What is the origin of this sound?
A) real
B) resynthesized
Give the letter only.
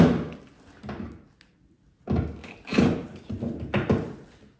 A